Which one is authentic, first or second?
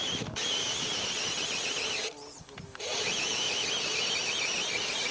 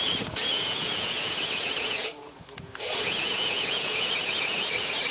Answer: first